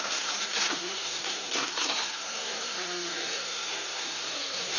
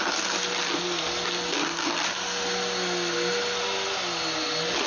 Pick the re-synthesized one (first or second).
first